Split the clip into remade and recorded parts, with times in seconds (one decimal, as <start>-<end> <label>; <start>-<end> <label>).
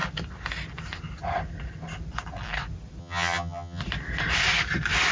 0.0-3.0 recorded; 3.0-3.8 remade; 3.8-5.1 recorded